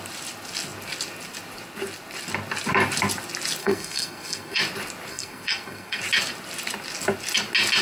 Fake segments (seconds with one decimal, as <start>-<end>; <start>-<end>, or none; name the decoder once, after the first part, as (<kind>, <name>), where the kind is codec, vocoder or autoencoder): 3.6-4.6 (codec, SNAC); 5.1-6.0